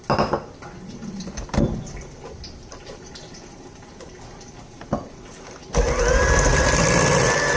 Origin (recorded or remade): recorded